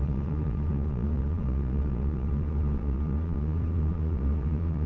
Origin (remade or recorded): remade